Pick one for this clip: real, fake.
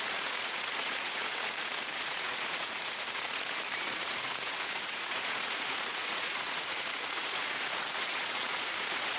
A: fake